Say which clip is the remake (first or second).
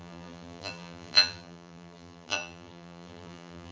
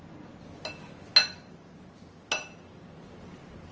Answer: first